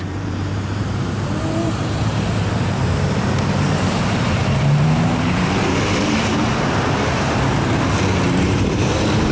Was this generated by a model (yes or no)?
yes